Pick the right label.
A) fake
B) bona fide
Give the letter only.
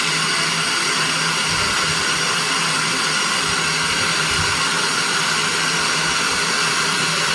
B